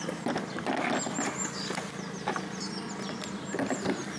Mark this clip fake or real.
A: real